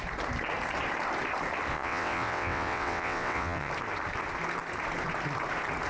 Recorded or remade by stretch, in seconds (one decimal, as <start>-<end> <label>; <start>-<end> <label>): 0.0-1.7 recorded; 1.7-3.7 remade; 3.7-5.9 recorded